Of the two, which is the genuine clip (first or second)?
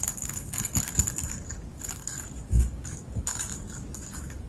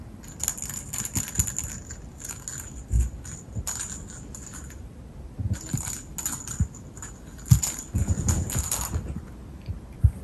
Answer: second